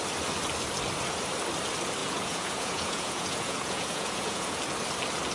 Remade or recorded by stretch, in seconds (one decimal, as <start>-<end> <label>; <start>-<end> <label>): 0.0-2.0 recorded; 2.0-4.6 remade; 4.6-5.3 recorded